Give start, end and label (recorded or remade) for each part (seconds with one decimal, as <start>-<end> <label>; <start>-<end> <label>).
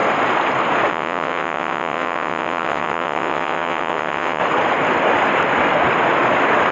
0.0-0.9 recorded; 0.9-4.4 remade; 4.4-6.7 recorded